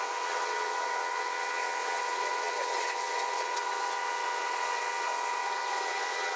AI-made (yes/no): yes